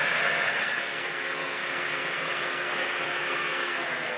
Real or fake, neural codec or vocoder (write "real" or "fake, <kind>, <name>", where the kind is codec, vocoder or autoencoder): fake, codec, SNAC